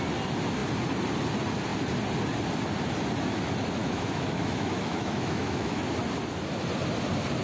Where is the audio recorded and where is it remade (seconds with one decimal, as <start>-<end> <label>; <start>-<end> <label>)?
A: 0.0-3.8 recorded; 3.8-5.8 remade; 5.8-7.4 recorded